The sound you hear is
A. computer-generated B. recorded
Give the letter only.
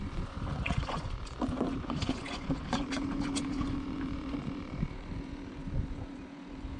A